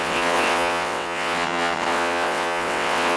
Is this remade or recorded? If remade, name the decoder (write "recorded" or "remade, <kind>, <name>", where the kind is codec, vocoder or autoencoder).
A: remade, vocoder, WaveNeXt